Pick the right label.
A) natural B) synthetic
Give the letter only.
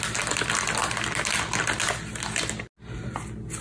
A